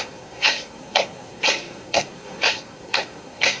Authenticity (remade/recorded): remade